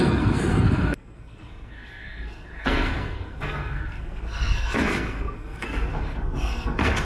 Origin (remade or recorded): remade